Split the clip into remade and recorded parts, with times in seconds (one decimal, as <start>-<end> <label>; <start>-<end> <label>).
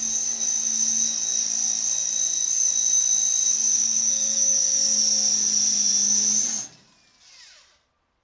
0.0-3.7 recorded; 3.7-5.0 remade; 5.0-8.2 recorded